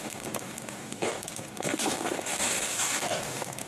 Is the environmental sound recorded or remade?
remade